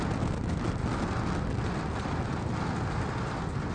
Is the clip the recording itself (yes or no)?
yes